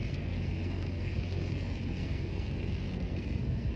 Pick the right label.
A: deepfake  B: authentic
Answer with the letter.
A